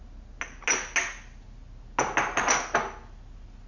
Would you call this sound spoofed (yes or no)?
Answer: no